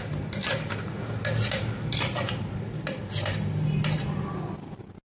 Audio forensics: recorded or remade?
recorded